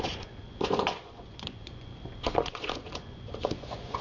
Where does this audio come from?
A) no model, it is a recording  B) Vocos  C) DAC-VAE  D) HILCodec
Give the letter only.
B